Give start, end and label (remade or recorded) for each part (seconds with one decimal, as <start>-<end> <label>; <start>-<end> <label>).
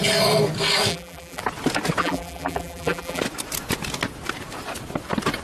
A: 0.0-0.9 recorded; 0.9-1.4 remade; 1.4-2.0 recorded; 2.0-3.2 remade; 3.2-5.4 recorded